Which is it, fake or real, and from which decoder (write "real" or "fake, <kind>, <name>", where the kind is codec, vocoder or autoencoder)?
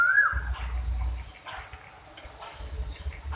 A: real